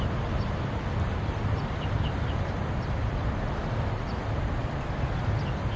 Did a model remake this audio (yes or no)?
no